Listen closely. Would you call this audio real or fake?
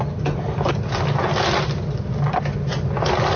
real